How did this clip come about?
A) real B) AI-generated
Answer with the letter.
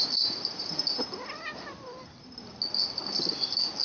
A